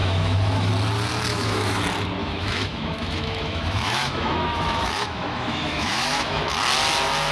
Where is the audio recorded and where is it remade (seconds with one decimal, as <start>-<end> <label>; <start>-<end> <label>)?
0.0-0.7 remade; 0.7-1.3 recorded; 1.3-1.8 remade; 1.8-2.2 recorded; 2.2-6.5 remade; 6.5-7.3 recorded